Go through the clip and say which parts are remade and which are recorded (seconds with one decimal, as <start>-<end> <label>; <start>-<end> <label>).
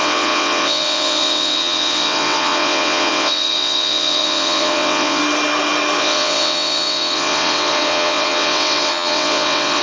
0.0-5.2 remade; 5.2-6.0 recorded; 6.0-9.8 remade